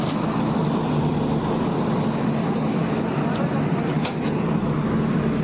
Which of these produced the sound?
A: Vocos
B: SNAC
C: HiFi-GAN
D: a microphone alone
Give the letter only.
D